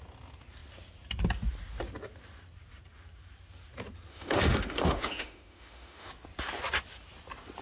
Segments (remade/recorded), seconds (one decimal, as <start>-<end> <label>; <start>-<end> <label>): 0.0-4.1 recorded; 4.1-6.1 remade; 6.1-7.6 recorded